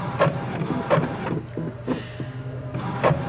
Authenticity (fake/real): real